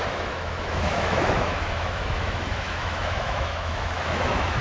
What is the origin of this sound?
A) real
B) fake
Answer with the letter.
B